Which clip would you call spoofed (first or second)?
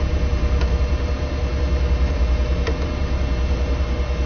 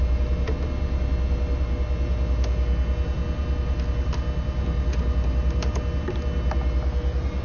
first